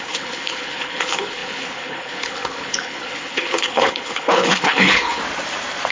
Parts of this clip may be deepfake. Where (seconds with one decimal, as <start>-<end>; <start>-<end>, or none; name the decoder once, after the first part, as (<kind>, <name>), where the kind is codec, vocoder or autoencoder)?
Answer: 0.0-5.2 (codec, HILCodec)